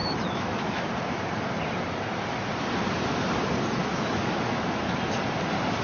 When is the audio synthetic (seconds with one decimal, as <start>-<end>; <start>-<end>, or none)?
0.0-0.9; 3.8-5.0